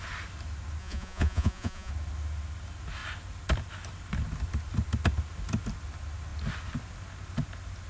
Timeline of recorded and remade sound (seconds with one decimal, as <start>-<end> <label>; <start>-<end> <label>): 0.0-0.8 recorded; 0.8-1.9 remade; 1.9-7.9 recorded